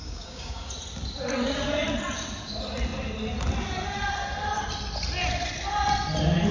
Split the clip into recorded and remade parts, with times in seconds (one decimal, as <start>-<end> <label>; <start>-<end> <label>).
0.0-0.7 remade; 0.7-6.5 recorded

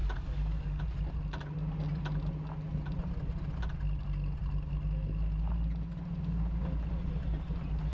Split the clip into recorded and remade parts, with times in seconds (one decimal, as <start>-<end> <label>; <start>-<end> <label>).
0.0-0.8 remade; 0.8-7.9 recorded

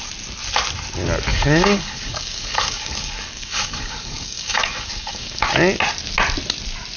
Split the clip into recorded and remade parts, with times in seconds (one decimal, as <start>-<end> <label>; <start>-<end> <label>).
0.0-1.3 recorded; 1.3-5.5 remade; 5.5-7.0 recorded

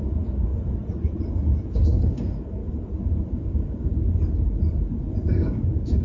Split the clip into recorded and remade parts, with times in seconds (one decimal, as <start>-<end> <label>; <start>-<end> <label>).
0.0-0.5 remade; 0.5-1.7 recorded; 1.7-2.6 remade; 2.6-3.4 recorded; 3.4-3.9 remade; 3.9-5.2 recorded; 5.2-6.0 remade

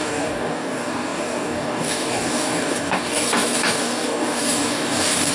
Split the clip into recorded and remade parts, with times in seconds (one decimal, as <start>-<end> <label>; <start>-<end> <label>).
0.0-5.3 remade